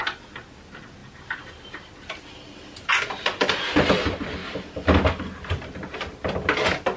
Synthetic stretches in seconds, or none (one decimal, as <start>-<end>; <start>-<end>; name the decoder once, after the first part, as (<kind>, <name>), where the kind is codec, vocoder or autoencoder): none